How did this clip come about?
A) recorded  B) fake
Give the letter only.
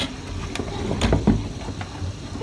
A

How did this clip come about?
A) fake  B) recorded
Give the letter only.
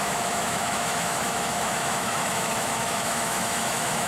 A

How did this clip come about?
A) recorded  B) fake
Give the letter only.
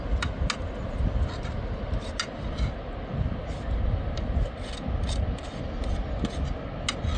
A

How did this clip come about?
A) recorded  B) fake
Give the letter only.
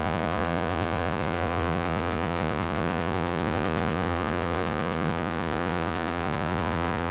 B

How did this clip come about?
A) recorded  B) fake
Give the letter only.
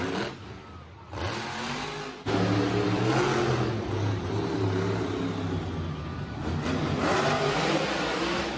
A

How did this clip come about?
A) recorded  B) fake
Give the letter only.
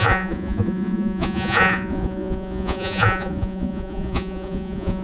B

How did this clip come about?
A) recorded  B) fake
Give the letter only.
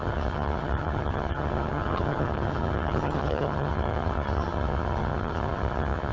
B